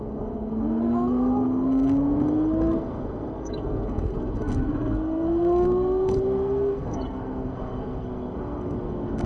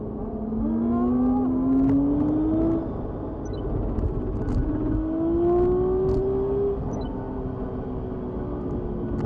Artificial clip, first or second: first